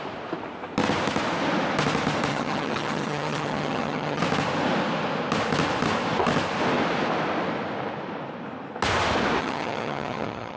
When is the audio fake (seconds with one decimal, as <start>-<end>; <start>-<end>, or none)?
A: 2.3-4.2; 9.4-10.6